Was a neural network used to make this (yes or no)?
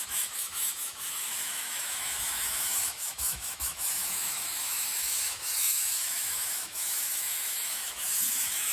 yes